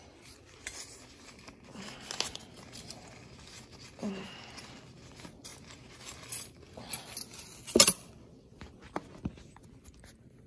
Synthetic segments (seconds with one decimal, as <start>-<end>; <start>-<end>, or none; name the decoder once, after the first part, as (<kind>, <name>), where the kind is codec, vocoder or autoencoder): none